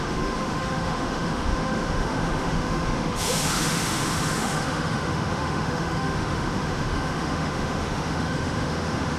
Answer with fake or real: fake